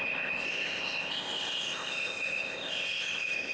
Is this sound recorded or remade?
remade